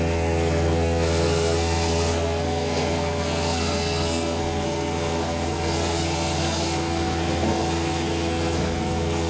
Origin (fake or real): fake